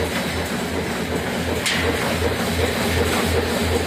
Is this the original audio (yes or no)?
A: yes